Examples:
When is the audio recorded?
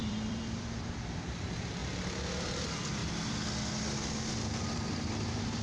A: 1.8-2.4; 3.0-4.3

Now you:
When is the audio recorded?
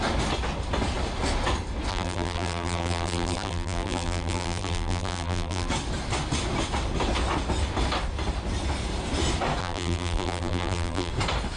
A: 0.0-1.9; 5.7-9.6; 11.1-11.6